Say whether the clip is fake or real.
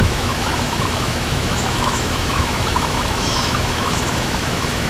fake